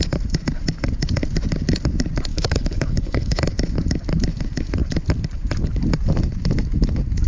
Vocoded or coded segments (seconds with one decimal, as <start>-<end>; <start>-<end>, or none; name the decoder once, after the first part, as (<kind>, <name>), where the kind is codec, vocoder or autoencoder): 2.3-3.4 (codec, HILCodec)